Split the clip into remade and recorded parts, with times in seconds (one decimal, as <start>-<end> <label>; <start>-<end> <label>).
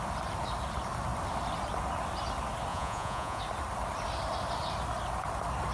0.0-2.7 recorded; 2.7-3.4 remade; 3.4-5.7 recorded